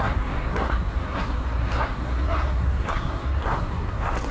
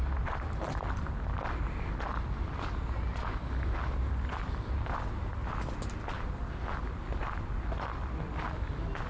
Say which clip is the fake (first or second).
first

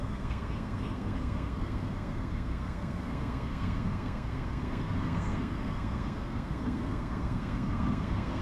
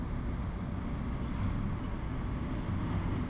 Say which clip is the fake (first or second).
first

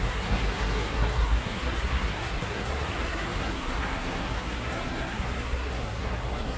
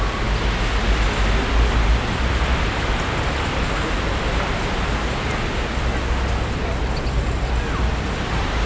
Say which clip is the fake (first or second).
first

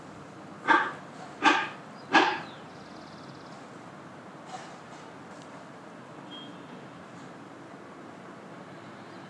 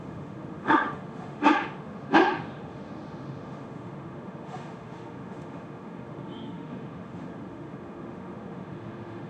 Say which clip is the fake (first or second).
second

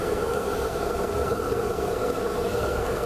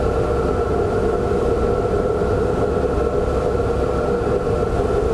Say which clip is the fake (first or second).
first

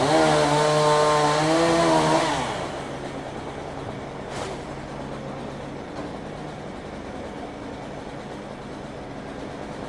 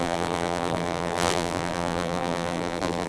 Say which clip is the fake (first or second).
second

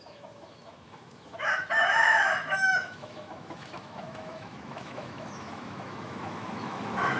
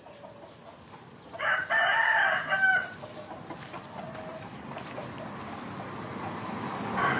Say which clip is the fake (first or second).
first